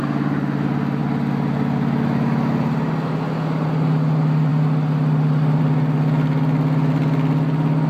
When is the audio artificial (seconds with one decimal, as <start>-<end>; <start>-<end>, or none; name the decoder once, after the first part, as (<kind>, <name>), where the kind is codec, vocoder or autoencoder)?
none

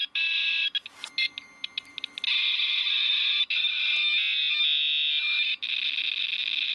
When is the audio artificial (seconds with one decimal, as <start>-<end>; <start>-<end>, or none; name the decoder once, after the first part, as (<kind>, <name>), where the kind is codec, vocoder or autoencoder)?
2.4-3.1 (vocoder, Vocos)

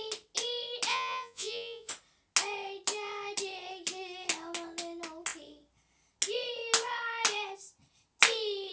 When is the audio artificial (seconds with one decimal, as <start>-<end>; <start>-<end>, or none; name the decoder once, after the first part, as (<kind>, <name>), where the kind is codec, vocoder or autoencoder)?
0.9-1.9 (vocoder, Vocos)

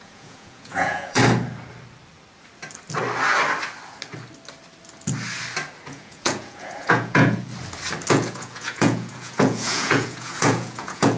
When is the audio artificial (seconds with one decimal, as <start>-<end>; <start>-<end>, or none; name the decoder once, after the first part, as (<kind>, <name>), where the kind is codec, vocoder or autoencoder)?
0.0-1.2 (vocoder, Vocos); 5.9-7.5; 8.1-11.2

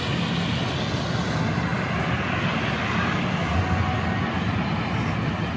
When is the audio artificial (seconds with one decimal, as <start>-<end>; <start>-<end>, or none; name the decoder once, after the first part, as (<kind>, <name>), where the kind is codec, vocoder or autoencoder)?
none

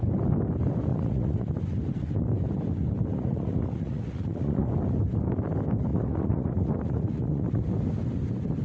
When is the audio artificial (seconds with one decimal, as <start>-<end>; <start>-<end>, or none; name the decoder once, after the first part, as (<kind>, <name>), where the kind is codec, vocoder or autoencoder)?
0.9-1.5 (vocoder, Vocos); 3.1-4.7; 5.9-7.6

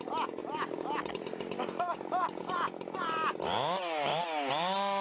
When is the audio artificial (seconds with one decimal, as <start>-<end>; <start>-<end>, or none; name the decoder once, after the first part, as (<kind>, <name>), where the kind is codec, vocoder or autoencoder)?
none

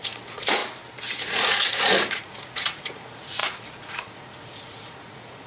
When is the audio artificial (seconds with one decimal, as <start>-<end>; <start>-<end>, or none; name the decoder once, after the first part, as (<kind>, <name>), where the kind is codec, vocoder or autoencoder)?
0.0-0.6 (vocoder, Vocos); 1.2-5.5